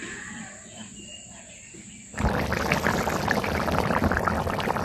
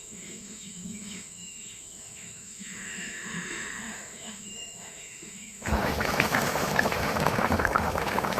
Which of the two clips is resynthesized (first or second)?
second